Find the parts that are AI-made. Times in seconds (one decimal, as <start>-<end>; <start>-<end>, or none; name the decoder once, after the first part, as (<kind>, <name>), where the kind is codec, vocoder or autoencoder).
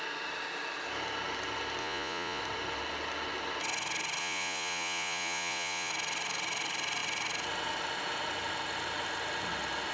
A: 1.8-2.4 (vocoder, Vocos); 4.2-5.9